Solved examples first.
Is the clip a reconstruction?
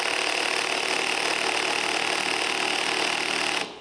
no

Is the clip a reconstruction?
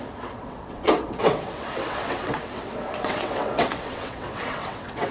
yes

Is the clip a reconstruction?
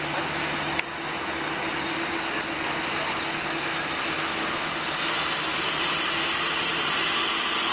no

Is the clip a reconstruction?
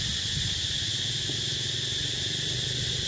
no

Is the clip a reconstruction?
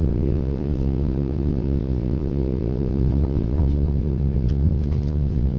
yes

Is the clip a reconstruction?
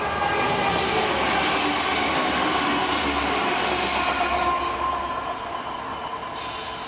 no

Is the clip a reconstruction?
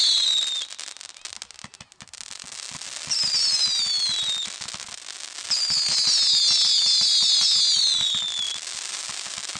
no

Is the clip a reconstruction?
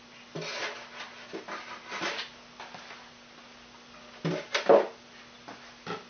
no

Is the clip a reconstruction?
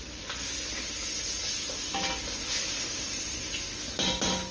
no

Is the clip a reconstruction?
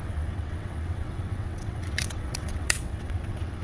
yes